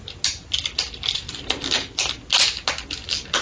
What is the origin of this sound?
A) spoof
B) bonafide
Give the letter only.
B